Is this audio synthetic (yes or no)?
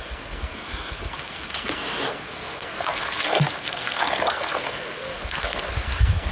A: yes